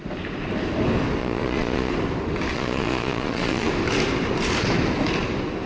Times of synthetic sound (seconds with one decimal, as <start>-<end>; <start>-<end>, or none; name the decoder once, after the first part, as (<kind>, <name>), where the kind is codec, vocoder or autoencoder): 1.2-1.9 (vocoder, Vocos); 2.5-3.7